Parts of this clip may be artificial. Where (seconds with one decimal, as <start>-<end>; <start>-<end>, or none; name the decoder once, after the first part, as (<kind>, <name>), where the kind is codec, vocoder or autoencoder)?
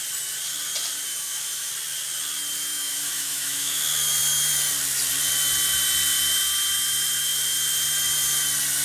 1.1-1.7 (autoencoder, DAC-VAE); 2.7-3.8